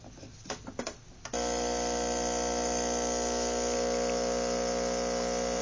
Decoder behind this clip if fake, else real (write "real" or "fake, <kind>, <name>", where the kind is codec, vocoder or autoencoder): real